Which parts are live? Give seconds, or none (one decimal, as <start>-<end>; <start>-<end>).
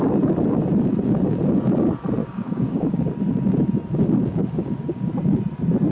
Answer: 0.0-2.2; 3.1-4.3; 5.0-5.9